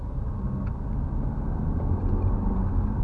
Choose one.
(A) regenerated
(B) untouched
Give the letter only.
B